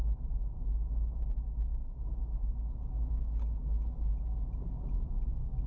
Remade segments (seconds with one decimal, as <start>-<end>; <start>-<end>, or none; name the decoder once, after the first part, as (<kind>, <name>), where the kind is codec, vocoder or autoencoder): none